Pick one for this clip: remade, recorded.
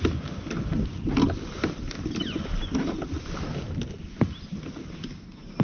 recorded